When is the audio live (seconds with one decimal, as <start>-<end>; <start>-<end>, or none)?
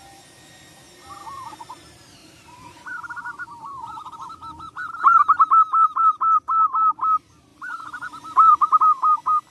0.0-2.2; 6.7-7.5; 8.8-9.5